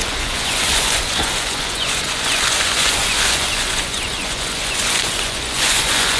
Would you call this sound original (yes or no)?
no